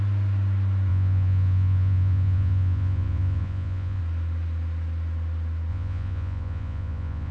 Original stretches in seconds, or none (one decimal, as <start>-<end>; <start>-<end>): 0.0-0.9; 4.0-5.7